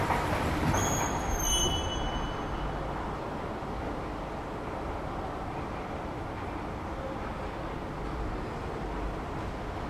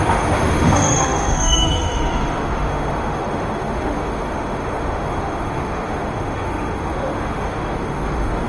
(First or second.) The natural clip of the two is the first